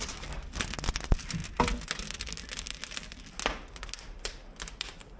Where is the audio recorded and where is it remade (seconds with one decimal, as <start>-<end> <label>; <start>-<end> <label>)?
0.0-5.2 recorded